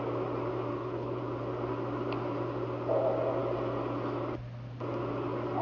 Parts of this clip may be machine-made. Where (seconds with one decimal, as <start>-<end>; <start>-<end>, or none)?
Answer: 0.7-1.2

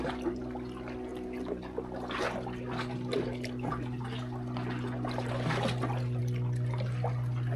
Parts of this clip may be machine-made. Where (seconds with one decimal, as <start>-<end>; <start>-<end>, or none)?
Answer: none

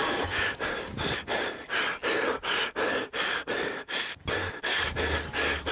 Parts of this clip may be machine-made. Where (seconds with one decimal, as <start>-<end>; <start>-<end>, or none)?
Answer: none